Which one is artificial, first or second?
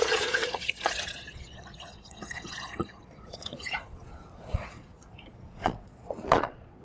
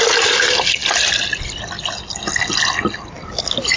first